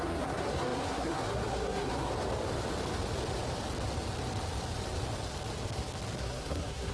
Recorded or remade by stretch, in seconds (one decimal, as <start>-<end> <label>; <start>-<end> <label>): 0.0-2.1 remade; 2.1-6.2 recorded; 6.2-6.9 remade